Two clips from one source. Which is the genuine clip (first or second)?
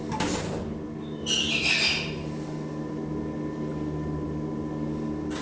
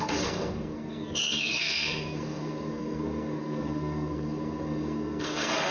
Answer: first